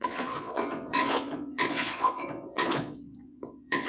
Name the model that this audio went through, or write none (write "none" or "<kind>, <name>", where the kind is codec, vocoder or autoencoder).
vocoder, Vocos